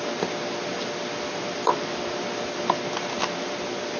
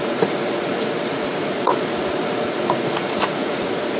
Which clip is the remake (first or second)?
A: second